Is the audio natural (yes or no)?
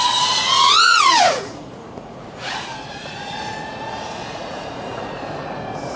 no